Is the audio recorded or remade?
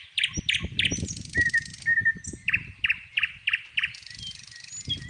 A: recorded